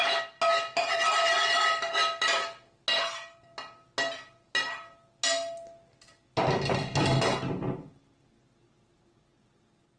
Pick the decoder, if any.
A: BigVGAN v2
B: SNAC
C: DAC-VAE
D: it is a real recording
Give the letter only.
D